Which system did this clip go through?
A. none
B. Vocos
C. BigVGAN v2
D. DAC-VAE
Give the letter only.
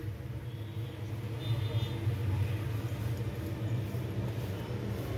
A